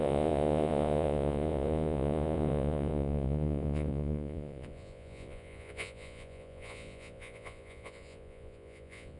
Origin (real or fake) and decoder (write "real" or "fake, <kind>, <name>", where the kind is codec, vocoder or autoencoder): fake, vocoder, Vocos